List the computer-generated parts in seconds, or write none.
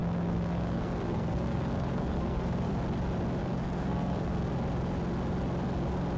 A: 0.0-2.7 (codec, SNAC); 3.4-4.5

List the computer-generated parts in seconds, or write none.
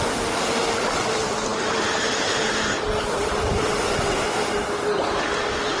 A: none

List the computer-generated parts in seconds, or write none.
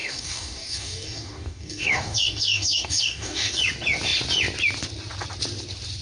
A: 0.0-3.6 (codec, DAC)